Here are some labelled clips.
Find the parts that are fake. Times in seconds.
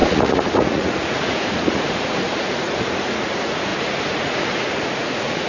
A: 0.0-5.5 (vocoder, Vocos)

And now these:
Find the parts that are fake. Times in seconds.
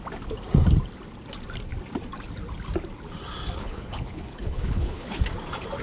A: 3.6-5.2 (codec, HILCodec)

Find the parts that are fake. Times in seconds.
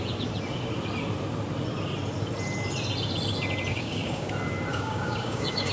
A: 3.7-4.3 (codec, DAC); 4.7-5.7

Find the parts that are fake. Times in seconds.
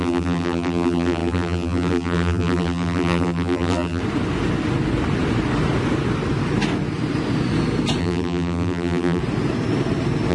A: 0.0-4.0 (vocoder, BigVGAN v2); 8.0-9.2